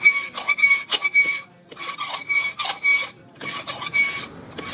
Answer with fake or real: fake